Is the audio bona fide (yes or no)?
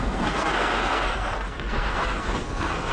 no